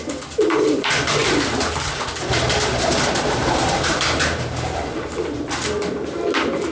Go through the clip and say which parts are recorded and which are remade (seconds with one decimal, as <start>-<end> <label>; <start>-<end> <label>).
0.0-6.7 recorded